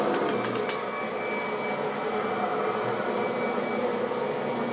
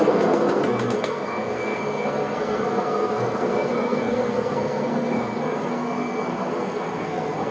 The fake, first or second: second